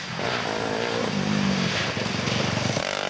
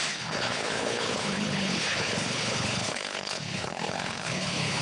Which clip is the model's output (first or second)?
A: second